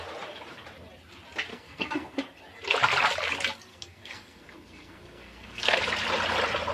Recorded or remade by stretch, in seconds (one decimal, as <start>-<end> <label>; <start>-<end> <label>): 0.0-1.5 recorded; 1.5-2.2 remade; 2.2-3.7 recorded; 3.7-5.8 remade; 5.8-6.7 recorded